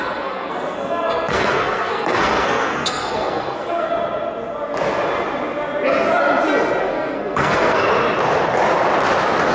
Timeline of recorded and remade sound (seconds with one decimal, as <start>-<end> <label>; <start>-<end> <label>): 0.0-3.9 remade; 3.9-6.8 recorded; 6.8-7.9 remade; 7.9-9.5 recorded